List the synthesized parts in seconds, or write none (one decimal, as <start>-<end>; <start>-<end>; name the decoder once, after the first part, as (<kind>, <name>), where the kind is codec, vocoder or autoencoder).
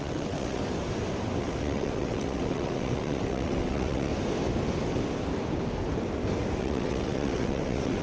0.0-0.6 (vocoder, WaveNeXt); 1.4-4.1; 6.6-8.0